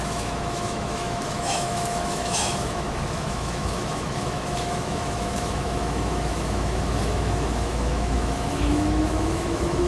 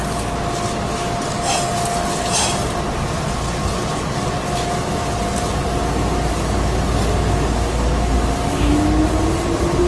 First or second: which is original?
second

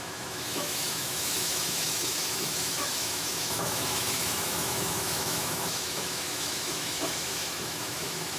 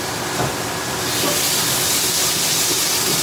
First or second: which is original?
second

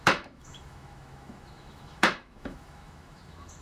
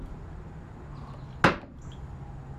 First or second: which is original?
second